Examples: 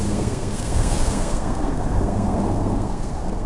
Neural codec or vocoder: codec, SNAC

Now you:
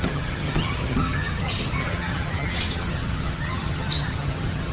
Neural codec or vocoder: vocoder, HiFi-GAN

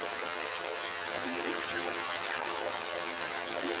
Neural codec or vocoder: vocoder, HiFi-GAN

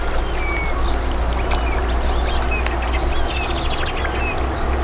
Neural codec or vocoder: none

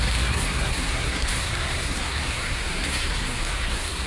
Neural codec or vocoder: codec, SNAC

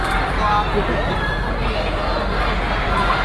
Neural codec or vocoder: none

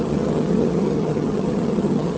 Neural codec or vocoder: vocoder, HiFi-GAN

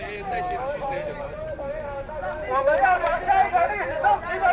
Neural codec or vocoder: none